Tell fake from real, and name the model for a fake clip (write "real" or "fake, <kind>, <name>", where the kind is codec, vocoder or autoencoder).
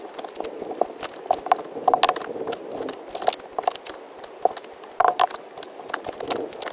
real